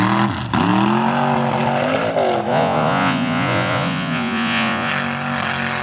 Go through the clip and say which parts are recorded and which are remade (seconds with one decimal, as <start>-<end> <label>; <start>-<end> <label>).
0.0-2.5 recorded; 2.5-4.9 remade; 4.9-5.8 recorded